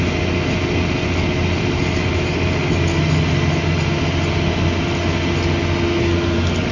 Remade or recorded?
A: recorded